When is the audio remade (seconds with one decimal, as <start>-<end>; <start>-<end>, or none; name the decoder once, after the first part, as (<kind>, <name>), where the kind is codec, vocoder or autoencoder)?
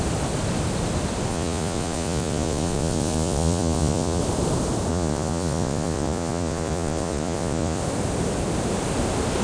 1.3-4.2 (vocoder, Vocos); 4.9-7.8